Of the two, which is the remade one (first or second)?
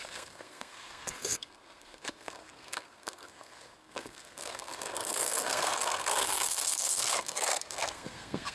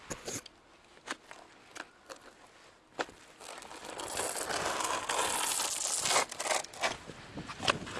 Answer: first